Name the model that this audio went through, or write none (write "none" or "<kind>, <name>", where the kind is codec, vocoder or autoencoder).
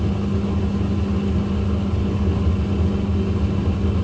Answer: none